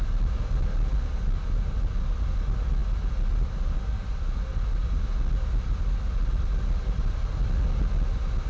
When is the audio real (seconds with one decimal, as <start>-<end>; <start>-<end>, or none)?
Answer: 0.0-8.5